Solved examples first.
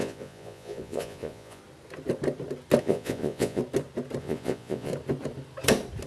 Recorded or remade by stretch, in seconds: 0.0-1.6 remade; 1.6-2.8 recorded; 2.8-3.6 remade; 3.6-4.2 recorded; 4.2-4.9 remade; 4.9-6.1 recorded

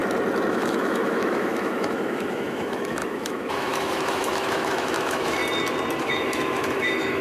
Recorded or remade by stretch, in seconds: 0.0-0.5 recorded; 0.5-5.4 remade; 5.4-6.0 recorded; 6.0-7.2 remade

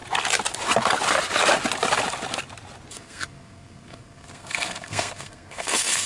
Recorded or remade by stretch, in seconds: 0.0-2.9 recorded; 2.9-6.1 remade

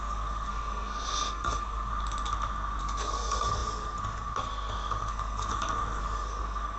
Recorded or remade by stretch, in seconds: 0.0-1.9 remade; 1.9-2.8 recorded; 2.8-5.5 remade; 5.5-6.0 recorded; 6.0-6.8 remade

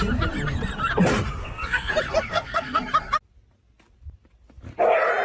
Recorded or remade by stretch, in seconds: 0.0-1.4 recorded; 1.4-1.9 remade; 1.9-2.3 recorded; 2.3-2.8 remade; 2.8-5.2 recorded

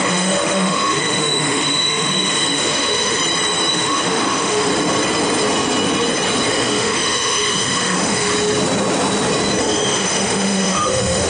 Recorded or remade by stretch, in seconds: 0.0-3.2 remade; 3.2-3.7 recorded; 3.7-4.7 remade; 4.7-6.5 recorded; 6.5-8.3 remade; 8.3-9.6 recorded; 9.6-11.3 remade

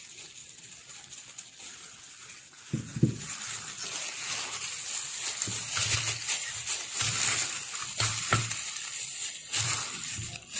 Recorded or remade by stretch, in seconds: 0.0-10.6 recorded